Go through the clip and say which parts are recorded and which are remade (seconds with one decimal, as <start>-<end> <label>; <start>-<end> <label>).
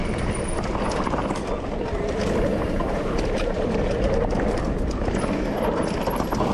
0.0-1.5 remade; 1.5-2.5 recorded; 2.5-4.7 remade; 4.7-6.5 recorded